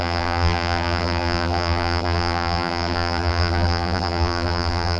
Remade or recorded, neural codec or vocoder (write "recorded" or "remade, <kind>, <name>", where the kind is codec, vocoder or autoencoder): remade, vocoder, BigVGAN v2